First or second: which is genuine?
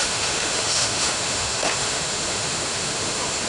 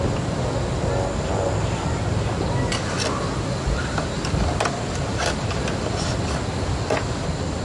second